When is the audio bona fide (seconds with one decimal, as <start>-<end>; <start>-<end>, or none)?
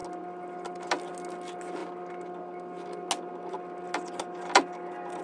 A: 0.0-5.2